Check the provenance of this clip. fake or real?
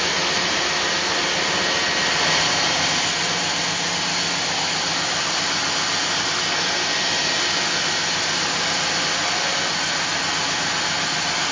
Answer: real